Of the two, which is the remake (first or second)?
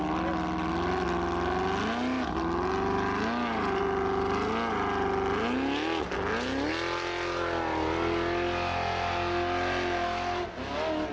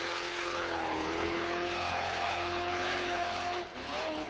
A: second